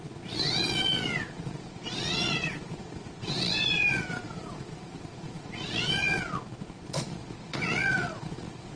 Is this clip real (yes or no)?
no